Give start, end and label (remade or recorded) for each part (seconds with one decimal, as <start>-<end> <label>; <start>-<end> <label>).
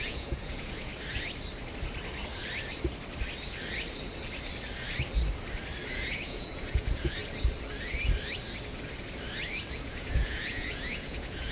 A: 0.0-0.9 remade; 0.9-5.9 recorded; 5.9-7.2 remade; 7.2-9.7 recorded; 9.7-11.5 remade